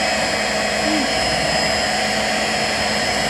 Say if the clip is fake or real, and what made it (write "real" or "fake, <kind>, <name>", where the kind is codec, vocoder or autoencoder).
real